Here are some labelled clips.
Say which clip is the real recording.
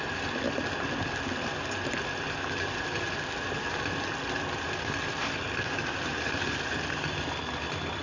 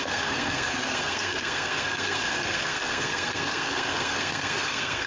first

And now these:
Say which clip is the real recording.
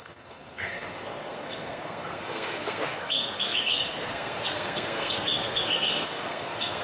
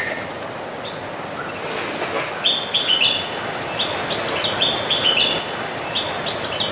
second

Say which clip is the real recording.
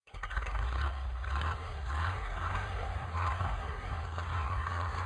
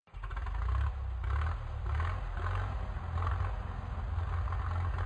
second